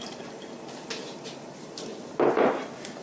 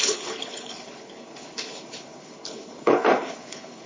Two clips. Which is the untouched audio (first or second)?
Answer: first